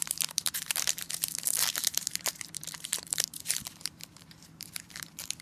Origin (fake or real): fake